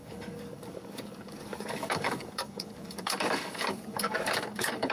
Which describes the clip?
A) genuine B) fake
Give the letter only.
B